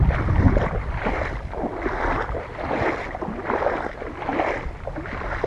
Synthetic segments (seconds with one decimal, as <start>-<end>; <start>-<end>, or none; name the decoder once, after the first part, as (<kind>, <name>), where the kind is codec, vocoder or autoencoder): none